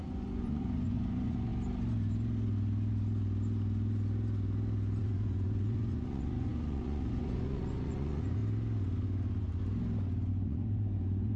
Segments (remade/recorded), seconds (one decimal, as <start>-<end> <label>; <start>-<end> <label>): 0.0-1.5 remade; 1.5-5.0 recorded; 5.0-8.4 remade; 8.4-10.3 recorded; 10.3-11.4 remade